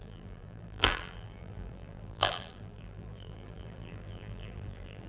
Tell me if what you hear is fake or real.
fake